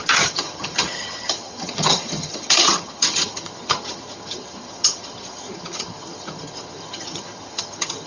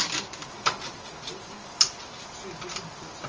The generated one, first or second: first